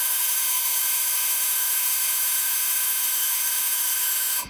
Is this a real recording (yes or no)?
no